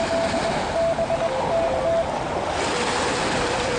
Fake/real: real